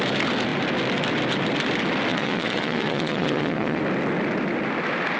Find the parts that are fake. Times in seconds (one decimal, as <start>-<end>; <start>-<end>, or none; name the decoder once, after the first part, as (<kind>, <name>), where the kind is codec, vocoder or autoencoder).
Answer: 2.1-3.8 (vocoder, Vocos)